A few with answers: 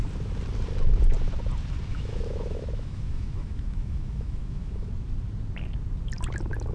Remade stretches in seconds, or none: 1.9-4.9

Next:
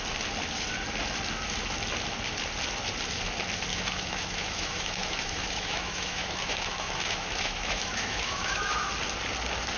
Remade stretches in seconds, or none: 3.7-8.9

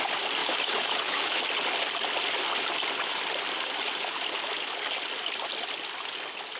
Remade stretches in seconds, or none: 0.4-1.4